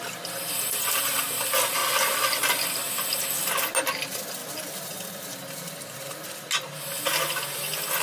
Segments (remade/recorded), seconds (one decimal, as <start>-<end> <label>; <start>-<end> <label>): 0.0-8.0 recorded